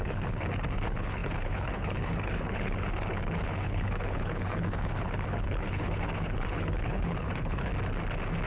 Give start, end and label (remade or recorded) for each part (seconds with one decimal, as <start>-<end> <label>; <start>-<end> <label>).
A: 0.0-7.7 remade; 7.7-8.5 recorded